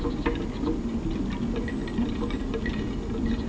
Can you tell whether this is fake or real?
real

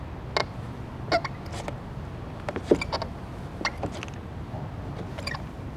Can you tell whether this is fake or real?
real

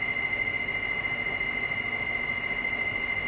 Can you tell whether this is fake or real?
real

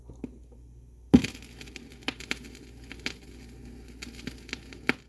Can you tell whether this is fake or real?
real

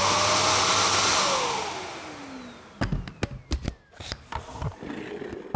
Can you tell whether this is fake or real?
real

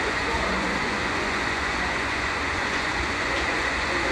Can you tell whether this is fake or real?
fake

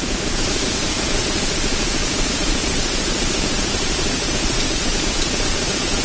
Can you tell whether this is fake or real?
fake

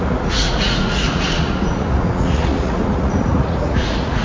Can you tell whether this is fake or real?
fake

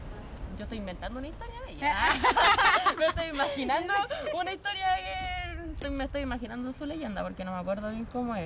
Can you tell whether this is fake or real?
real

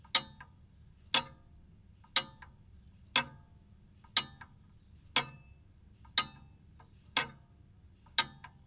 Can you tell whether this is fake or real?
real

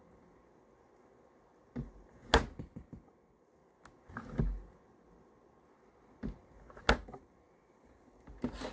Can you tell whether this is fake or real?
real